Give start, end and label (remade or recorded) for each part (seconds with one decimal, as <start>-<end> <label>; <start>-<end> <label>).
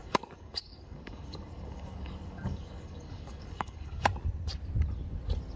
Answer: 0.0-4.1 remade; 4.1-5.6 recorded